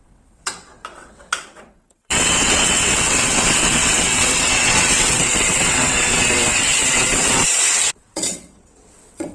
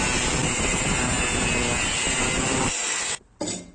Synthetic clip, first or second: first